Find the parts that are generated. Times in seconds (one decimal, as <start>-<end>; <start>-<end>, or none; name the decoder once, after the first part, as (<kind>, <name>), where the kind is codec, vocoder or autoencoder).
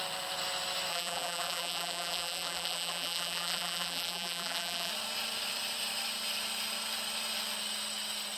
0.9-4.9 (vocoder, BigVGAN v2)